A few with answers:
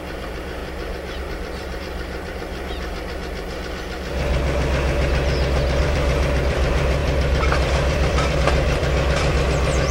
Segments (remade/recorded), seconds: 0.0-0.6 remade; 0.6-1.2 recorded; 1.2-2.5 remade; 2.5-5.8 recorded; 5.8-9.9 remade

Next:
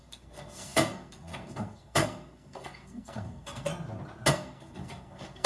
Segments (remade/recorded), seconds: 0.0-3.7 remade; 3.7-4.3 recorded; 4.3-5.5 remade

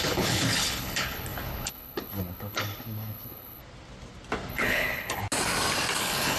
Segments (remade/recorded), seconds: 0.0-3.6 remade; 3.6-4.5 recorded; 4.5-5.2 remade; 5.2-6.0 recorded; 6.0-6.4 remade